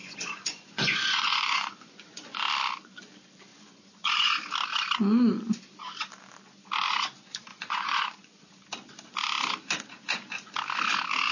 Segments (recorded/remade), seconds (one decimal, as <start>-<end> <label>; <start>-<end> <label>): 0.0-2.4 remade; 2.4-3.5 recorded; 3.5-4.4 remade; 4.4-7.5 recorded; 7.5-8.4 remade; 8.4-11.3 recorded